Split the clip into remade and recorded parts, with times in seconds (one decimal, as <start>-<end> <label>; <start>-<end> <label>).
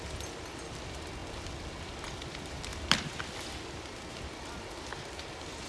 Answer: 0.0-5.7 recorded